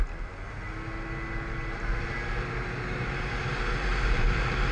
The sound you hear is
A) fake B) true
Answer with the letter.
B